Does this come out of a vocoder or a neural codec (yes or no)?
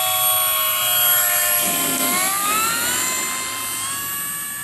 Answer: no